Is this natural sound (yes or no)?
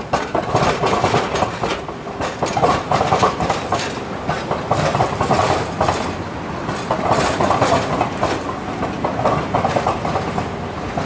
yes